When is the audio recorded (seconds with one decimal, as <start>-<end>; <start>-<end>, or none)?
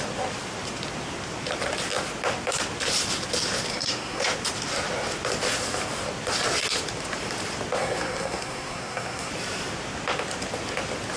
0.0-3.7; 4.2-7.8; 9.3-11.2